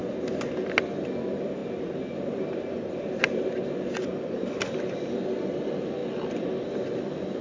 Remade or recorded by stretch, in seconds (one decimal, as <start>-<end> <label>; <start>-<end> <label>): 0.0-1.2 recorded; 1.2-7.4 remade